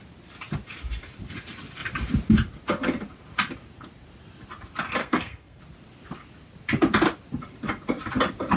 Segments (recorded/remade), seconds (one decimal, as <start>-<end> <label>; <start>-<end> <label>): 0.0-5.0 recorded; 5.0-5.6 remade; 5.6-8.6 recorded